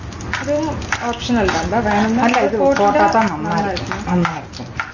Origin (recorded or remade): recorded